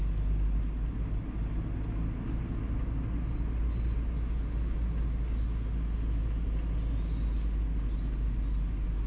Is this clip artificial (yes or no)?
no